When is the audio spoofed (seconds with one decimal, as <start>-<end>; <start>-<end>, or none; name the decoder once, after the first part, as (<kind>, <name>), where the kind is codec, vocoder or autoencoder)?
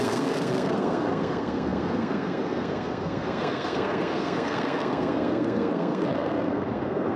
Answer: 0.0-7.2 (codec, SNAC)